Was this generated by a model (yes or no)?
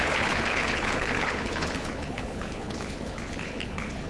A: yes